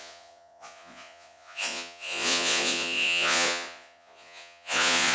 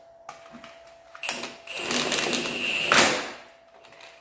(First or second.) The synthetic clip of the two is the first